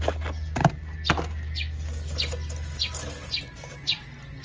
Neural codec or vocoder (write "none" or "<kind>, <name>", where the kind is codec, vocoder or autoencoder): none